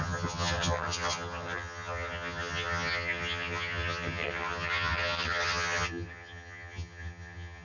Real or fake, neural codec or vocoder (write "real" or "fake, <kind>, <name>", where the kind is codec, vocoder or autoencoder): fake, vocoder, HiFi-GAN